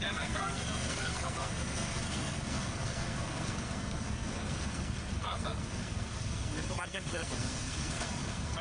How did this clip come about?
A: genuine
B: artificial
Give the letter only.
B